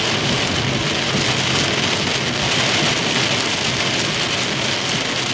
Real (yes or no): yes